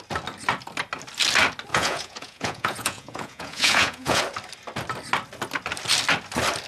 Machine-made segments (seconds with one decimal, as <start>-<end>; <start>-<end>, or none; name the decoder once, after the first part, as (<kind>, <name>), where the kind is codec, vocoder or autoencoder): 1.7-4.2 (vocoder, Vocos)